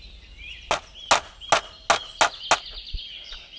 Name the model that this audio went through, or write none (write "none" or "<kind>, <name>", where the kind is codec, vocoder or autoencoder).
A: none